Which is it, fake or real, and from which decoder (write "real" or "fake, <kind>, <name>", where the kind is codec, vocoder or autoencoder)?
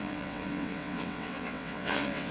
fake, vocoder, WaveNeXt